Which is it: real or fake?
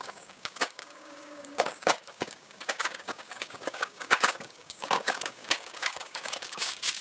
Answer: fake